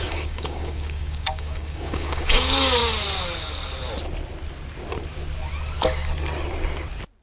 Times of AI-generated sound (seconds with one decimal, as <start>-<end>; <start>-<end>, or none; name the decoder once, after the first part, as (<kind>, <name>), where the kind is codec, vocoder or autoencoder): 0.0-2.8 (codec, DAC)